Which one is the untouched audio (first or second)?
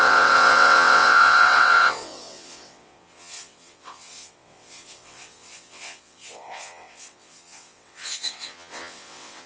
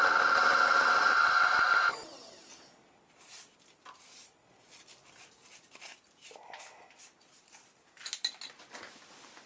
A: second